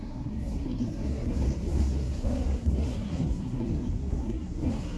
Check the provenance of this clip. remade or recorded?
remade